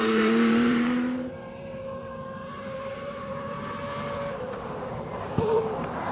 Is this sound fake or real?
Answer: fake